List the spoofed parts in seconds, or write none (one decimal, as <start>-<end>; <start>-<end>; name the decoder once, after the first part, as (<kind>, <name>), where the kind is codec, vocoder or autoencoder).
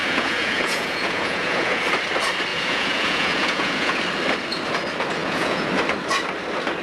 0.0-1.8 (vocoder, Vocos); 2.5-4.0; 5.2-5.7